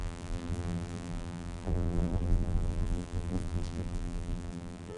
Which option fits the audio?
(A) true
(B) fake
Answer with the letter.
B